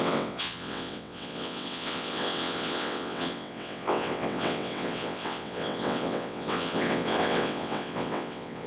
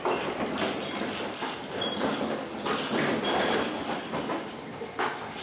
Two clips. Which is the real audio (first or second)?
second